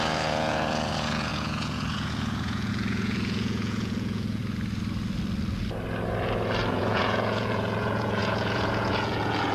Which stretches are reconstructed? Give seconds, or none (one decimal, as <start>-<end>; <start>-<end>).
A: 0.0-4.4; 6.7-9.5